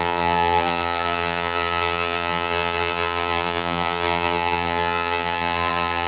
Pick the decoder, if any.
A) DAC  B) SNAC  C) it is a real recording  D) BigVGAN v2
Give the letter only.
D